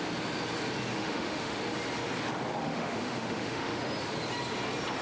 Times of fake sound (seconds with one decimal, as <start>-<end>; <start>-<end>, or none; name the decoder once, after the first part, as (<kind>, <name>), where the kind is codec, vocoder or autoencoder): 0.9-1.6 (autoencoder, DAC-VAE); 2.6-3.8

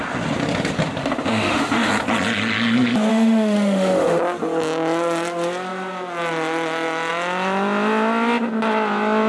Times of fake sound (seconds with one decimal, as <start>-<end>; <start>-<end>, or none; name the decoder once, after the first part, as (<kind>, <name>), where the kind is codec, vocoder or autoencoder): 1.0-1.9 (autoencoder, DAC-VAE); 3.1-4.2

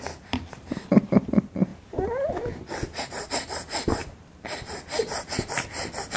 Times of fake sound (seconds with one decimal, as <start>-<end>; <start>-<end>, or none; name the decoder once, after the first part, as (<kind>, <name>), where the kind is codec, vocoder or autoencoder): none

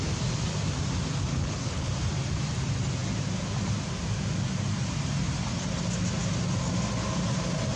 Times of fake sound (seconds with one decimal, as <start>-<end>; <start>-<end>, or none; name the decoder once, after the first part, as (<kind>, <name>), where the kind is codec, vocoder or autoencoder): 1.3-1.9 (codec, HILCodec)

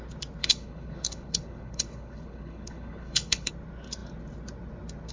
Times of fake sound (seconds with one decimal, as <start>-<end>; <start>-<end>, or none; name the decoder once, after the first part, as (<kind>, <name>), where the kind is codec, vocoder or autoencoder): 0.4-3.5 (codec, HILCodec)

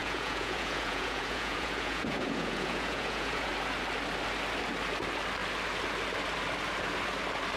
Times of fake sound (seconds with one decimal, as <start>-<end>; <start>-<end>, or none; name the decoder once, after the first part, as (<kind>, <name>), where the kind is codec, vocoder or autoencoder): 0.0-3.5 (vocoder, Vocos)